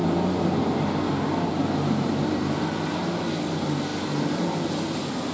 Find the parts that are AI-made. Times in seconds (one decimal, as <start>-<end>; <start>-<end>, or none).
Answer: none

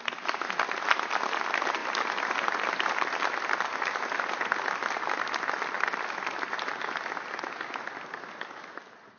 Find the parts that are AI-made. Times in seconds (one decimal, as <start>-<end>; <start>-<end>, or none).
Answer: none